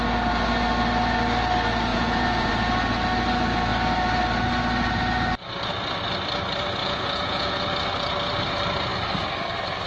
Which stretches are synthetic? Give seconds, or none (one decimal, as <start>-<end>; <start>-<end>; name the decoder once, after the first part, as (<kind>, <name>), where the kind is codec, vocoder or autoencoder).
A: 1.9-2.5 (vocoder, Vocos); 6.8-7.6